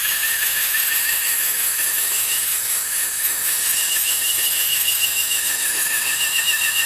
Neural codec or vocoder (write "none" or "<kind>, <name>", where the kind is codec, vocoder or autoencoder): autoencoder, DAC-VAE